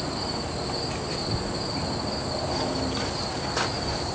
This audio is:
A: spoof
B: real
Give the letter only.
B